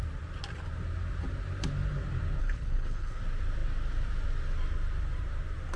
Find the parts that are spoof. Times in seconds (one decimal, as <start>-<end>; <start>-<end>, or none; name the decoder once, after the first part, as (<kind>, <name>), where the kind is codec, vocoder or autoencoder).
2.4-3.2 (codec, HILCodec)